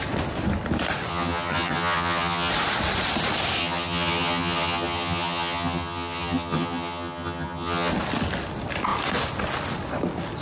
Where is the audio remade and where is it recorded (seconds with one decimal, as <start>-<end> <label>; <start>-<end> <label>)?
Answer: 0.0-1.1 recorded; 1.1-2.5 remade; 2.5-3.6 recorded; 3.6-7.9 remade; 7.9-10.4 recorded